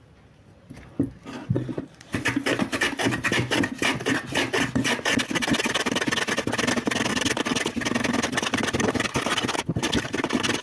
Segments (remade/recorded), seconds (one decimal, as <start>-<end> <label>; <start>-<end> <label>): 0.0-1.4 recorded; 1.4-2.1 remade; 2.1-10.6 recorded

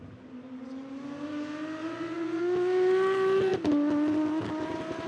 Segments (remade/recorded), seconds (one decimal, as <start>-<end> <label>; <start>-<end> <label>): 0.0-1.8 recorded; 1.8-2.4 remade; 2.4-5.1 recorded

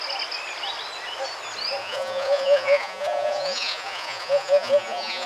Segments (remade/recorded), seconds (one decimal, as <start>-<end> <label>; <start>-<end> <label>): 0.0-1.8 recorded; 1.8-5.3 remade